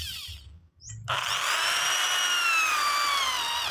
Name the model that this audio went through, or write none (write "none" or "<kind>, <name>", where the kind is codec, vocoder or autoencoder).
none